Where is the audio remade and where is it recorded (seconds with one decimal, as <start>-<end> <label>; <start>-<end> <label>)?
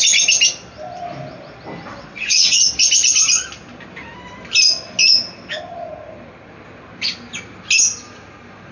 0.0-1.9 recorded; 1.9-2.6 remade; 2.6-8.7 recorded